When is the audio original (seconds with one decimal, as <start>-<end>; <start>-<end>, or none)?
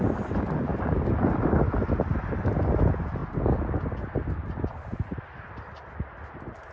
0.0-6.7